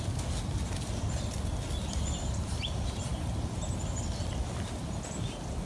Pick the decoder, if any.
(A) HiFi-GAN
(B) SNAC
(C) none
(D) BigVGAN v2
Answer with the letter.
C